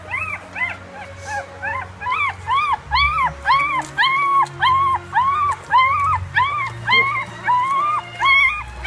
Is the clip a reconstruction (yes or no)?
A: no